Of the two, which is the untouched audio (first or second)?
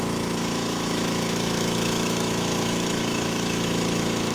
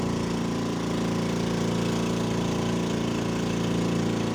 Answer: second